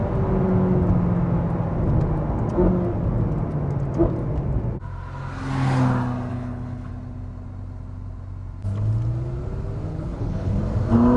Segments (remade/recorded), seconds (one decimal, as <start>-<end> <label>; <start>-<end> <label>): 0.0-6.3 recorded; 6.3-6.9 remade; 6.9-9.9 recorded; 9.9-10.6 remade; 10.6-11.2 recorded